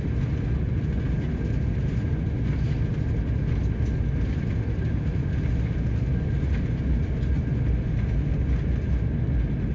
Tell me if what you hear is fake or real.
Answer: real